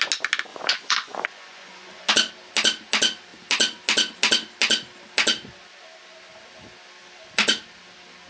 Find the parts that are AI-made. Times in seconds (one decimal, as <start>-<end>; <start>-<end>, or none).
0.5-2.1